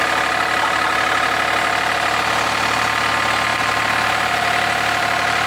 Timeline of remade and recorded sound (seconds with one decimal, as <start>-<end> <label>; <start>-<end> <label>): 0.0-3.5 recorded; 3.5-5.5 remade